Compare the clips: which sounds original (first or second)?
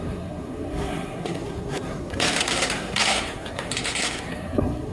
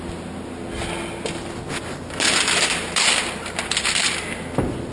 second